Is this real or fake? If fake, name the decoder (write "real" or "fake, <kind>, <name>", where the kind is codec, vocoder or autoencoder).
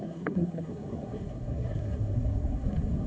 fake, codec, SNAC